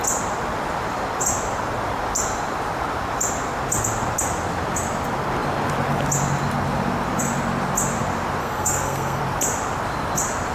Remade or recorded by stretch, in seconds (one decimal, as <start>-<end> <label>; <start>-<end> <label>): 0.0-8.4 recorded; 8.4-9.2 remade; 9.2-10.5 recorded